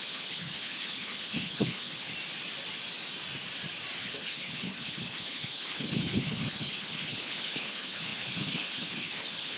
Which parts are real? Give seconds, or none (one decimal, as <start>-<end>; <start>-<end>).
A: 2.1-4.0